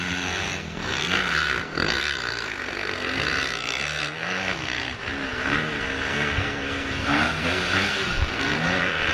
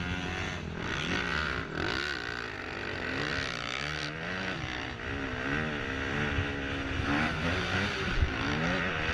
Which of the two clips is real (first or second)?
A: second